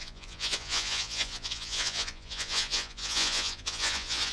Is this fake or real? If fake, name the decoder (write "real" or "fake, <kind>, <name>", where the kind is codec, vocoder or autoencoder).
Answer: fake, vocoder, Vocos